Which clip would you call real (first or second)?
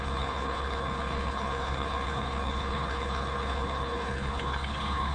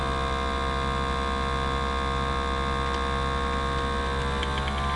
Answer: second